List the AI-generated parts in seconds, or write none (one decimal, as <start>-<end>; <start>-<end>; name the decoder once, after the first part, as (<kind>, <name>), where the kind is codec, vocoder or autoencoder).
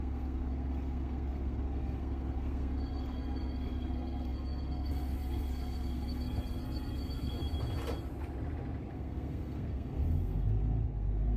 0.0-7.4 (codec, SNAC); 8.9-11.4